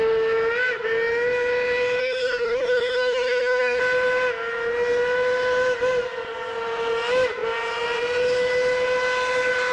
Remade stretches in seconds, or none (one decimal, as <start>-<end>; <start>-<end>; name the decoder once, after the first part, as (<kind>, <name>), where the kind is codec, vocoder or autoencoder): 2.0-3.8 (codec, SNAC)